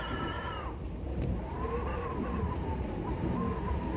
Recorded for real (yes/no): yes